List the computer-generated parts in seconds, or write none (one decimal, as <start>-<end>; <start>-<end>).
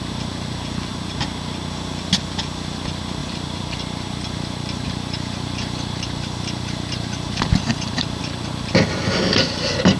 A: 3.2-8.2